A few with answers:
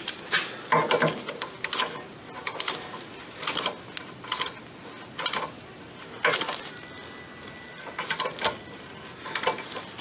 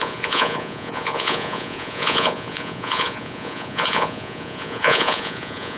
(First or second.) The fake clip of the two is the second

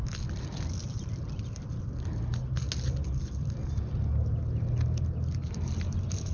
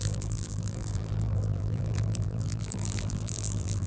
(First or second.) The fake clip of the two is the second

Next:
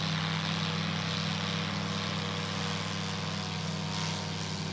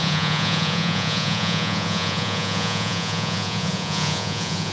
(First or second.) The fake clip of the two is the second